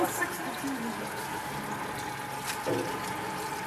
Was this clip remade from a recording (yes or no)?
no